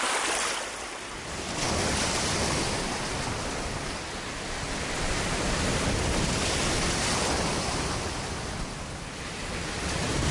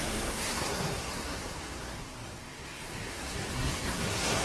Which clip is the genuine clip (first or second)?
first